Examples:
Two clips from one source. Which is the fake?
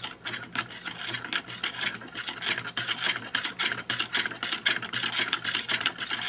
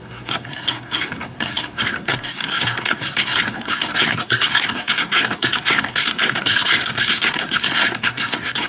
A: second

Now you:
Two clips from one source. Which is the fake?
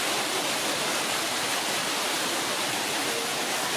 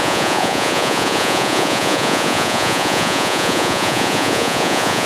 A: second